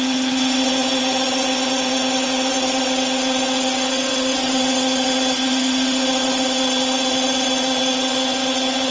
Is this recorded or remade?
remade